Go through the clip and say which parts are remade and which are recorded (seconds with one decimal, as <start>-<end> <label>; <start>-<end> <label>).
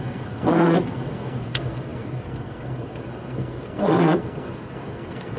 0.0-5.4 remade